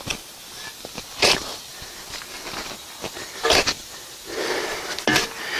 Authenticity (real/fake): real